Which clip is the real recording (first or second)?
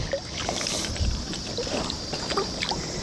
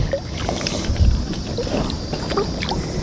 second